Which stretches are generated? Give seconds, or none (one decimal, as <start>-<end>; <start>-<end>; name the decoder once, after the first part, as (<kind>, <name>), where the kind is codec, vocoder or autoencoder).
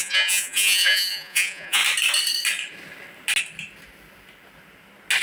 0.0-1.8 (vocoder, Vocos)